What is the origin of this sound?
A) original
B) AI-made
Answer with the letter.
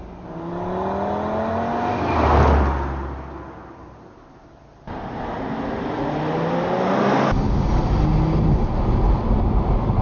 A